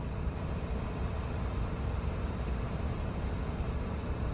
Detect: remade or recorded recorded